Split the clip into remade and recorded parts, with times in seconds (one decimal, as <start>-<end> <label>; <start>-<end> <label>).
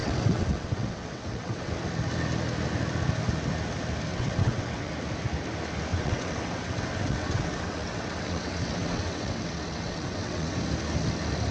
0.0-1.7 remade; 1.7-4.1 recorded; 4.1-4.9 remade; 4.9-5.9 recorded; 5.9-10.6 remade; 10.6-11.5 recorded